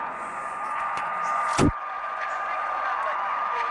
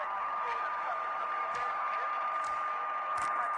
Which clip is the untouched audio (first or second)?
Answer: second